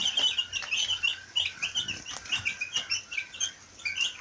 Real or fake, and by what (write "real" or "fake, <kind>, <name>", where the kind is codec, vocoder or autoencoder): real